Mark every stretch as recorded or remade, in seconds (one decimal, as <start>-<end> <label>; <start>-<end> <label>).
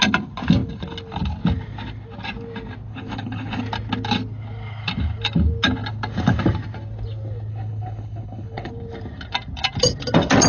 0.0-2.9 recorded; 2.9-3.6 remade; 3.6-7.5 recorded; 7.5-8.7 remade; 8.7-10.5 recorded